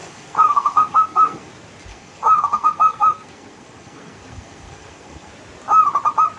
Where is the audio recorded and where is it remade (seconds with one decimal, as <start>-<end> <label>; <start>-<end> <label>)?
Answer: 0.0-1.5 remade; 1.5-1.9 recorded; 1.9-5.3 remade; 5.3-6.4 recorded